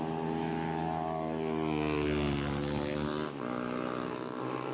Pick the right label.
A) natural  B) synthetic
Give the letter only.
A